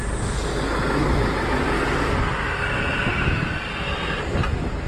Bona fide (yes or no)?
yes